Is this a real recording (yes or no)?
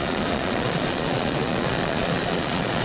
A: no